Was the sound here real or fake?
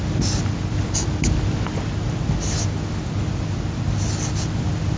real